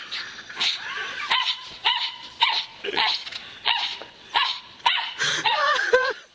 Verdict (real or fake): fake